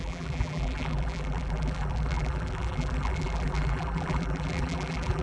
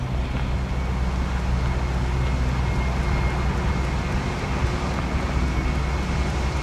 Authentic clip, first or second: second